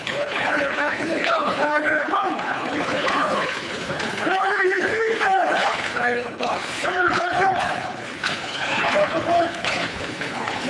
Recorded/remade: remade